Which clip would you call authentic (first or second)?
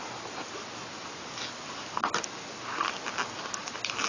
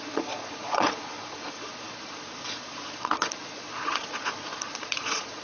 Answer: first